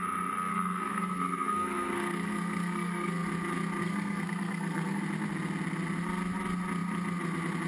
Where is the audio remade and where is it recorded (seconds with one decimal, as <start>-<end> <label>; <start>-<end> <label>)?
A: 0.0-0.5 recorded; 0.5-3.1 remade; 3.1-3.8 recorded; 3.8-5.0 remade; 5.0-7.7 recorded